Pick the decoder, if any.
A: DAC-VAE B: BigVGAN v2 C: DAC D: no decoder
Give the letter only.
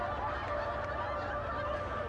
D